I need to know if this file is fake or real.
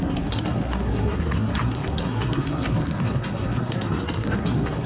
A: fake